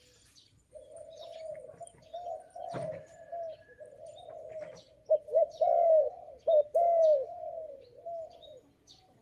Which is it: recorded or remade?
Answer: recorded